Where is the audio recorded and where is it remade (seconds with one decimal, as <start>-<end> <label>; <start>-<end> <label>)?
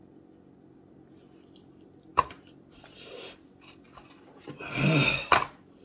0.0-2.1 recorded; 2.1-4.5 remade; 4.5-5.8 recorded